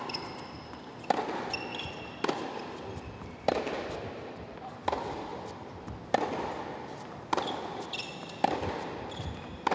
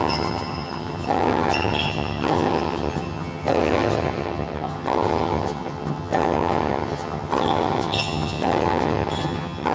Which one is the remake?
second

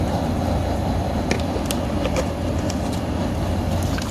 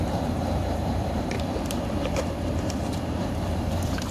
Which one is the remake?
second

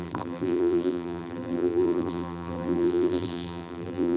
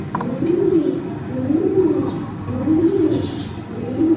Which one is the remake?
first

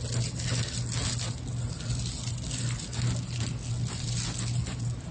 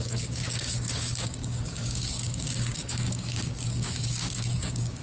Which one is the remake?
second